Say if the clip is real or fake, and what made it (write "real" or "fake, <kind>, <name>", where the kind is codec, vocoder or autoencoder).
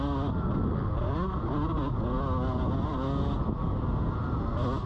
real